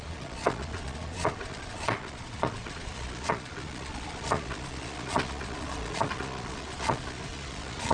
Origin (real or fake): fake